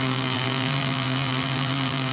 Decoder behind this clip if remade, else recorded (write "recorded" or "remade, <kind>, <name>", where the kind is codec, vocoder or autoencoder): remade, vocoder, BigVGAN v2